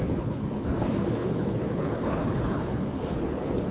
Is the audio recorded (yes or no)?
no